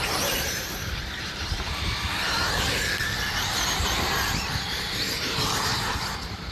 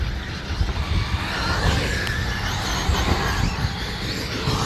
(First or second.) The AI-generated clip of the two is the first